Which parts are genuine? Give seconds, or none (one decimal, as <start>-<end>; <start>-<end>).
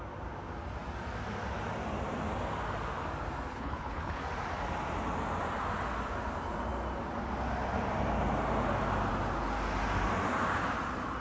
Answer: 0.0-3.5; 4.2-11.2